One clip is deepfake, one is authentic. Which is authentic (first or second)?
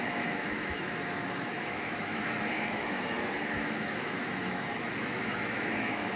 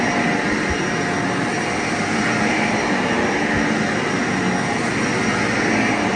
second